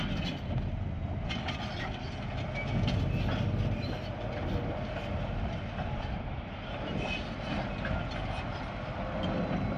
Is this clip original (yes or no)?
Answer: yes